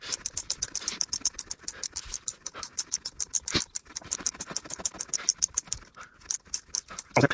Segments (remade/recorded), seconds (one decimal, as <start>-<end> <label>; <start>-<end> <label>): 0.0-7.3 recorded